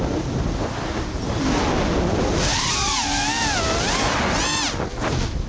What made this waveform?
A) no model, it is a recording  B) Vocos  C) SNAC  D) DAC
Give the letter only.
A